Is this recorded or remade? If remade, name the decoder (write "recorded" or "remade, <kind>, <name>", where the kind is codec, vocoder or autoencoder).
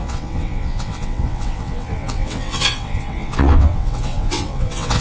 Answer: remade, vocoder, WaveNeXt